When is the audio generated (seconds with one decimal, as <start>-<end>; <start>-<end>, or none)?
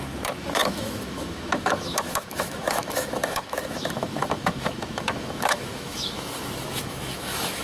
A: 0.0-7.6